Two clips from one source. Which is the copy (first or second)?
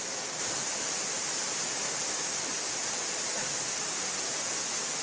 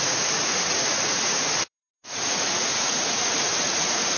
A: second